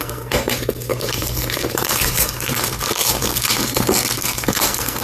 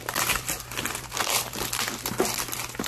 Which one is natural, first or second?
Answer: second